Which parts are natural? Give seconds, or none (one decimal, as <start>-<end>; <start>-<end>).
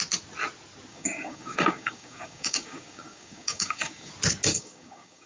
0.0-0.9; 4.1-4.5